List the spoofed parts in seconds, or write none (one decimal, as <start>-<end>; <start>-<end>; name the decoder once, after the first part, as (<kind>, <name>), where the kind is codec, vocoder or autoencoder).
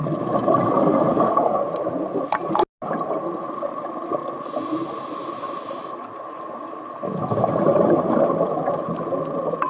1.1-1.6 (codec, DAC)